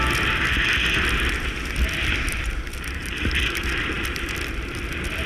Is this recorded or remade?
recorded